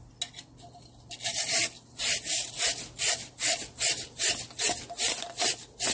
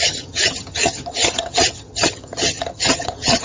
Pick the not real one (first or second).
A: second